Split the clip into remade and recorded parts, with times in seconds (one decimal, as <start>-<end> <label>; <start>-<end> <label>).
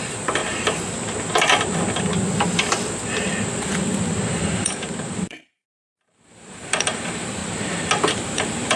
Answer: 0.0-0.4 remade; 0.4-4.3 recorded; 4.3-7.4 remade; 7.4-8.0 recorded; 8.0-8.8 remade